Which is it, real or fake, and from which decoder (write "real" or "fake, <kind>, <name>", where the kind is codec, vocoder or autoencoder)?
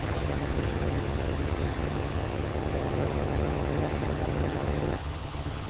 fake, vocoder, HiFi-GAN